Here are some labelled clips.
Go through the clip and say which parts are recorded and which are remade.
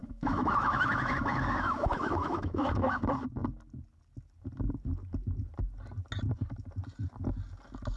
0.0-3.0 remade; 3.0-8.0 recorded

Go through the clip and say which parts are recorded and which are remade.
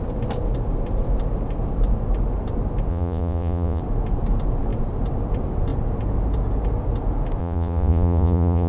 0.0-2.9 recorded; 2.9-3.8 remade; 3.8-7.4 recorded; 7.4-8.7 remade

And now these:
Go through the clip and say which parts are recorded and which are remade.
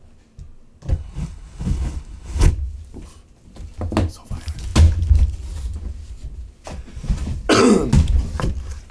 0.0-0.9 recorded; 0.9-2.5 remade; 2.5-8.9 recorded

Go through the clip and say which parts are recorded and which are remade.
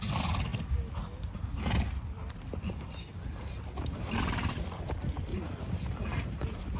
0.0-5.3 recorded; 5.3-6.8 remade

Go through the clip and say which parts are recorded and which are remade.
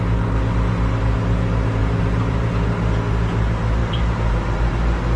0.0-1.8 recorded; 1.8-2.5 remade; 2.5-3.8 recorded; 3.8-4.7 remade; 4.7-5.2 recorded